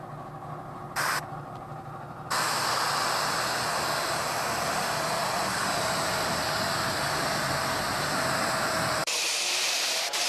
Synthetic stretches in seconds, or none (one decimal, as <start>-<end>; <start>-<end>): 9.0-10.3